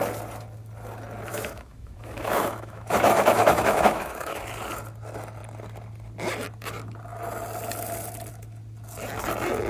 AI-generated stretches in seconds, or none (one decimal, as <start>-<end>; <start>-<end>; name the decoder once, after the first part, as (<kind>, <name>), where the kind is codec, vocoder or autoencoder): 1.3-4.4 (autoencoder, DAC-VAE)